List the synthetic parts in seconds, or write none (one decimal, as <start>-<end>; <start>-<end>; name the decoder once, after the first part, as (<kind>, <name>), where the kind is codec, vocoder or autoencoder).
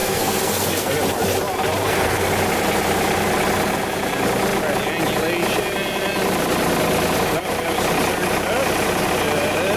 0.0-0.9 (codec, SNAC); 1.8-2.3